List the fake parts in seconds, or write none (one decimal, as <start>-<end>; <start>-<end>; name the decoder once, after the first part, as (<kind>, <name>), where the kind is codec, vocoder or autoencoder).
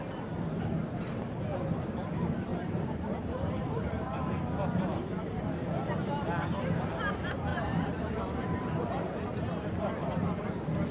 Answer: 2.5-4.4 (vocoder, BigVGAN v2); 7.5-9.4